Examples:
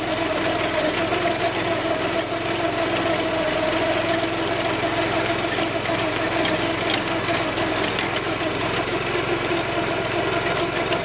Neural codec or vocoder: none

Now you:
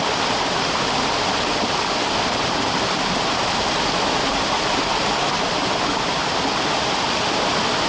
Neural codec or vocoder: none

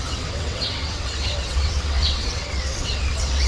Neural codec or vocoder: vocoder, WaveNeXt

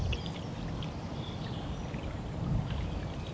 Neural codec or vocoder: none